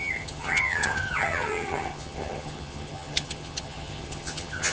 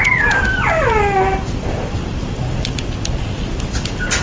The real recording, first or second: second